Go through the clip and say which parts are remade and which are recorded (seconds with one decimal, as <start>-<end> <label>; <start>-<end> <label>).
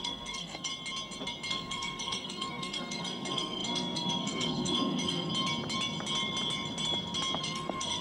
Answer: 0.0-0.7 remade; 0.7-1.5 recorded; 1.5-5.3 remade; 5.3-7.4 recorded; 7.4-8.0 remade